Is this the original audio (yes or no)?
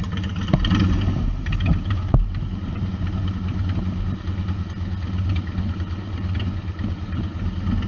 yes